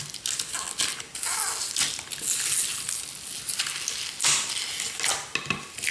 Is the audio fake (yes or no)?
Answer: no